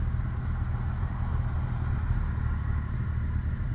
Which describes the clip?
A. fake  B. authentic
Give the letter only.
B